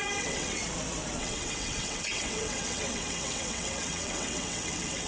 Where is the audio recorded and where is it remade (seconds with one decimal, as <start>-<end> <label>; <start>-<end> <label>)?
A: 0.0-0.6 remade; 0.6-1.2 recorded; 1.2-5.1 remade